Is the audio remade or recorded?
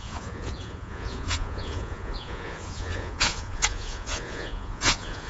remade